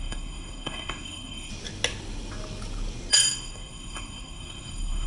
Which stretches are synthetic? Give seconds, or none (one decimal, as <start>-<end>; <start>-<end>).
0.0-1.5; 3.1-5.1